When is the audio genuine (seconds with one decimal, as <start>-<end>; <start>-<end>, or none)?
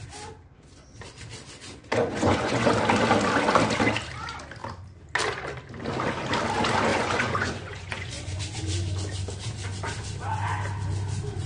0.0-1.7; 2.7-6.9; 8.4-11.5